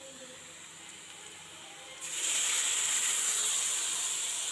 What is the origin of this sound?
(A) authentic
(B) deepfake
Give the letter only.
A